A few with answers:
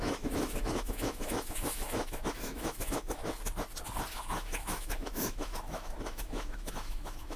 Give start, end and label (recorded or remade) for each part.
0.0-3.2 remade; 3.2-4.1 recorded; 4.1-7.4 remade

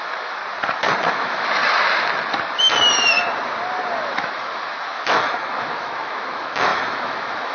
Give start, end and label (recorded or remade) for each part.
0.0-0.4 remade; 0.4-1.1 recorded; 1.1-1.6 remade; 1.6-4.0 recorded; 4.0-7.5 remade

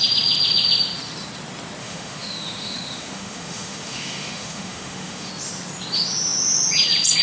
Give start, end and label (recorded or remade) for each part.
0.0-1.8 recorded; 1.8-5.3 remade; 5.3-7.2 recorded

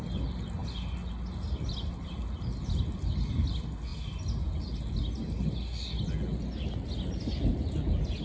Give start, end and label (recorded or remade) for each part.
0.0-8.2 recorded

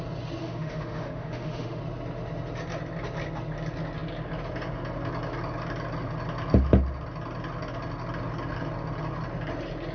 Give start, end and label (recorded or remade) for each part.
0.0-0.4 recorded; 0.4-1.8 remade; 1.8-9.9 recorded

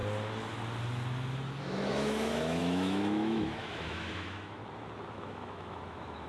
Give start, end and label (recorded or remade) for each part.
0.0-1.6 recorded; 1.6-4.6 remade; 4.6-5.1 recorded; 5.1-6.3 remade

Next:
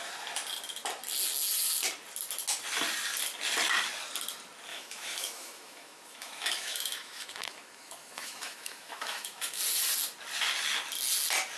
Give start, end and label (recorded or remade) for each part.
0.0-4.7 recorded; 4.7-9.6 remade; 9.6-11.6 recorded